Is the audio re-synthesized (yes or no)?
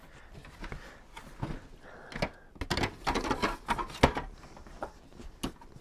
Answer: no